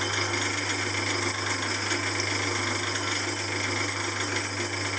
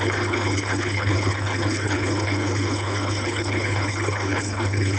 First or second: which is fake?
second